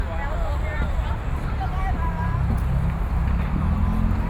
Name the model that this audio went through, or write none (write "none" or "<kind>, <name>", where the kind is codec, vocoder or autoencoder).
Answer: none